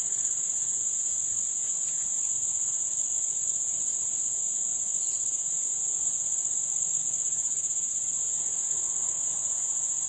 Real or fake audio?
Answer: fake